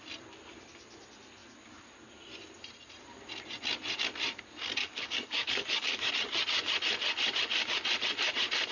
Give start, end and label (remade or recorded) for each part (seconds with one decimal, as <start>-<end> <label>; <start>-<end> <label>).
0.0-4.8 recorded; 4.8-6.1 remade; 6.1-8.7 recorded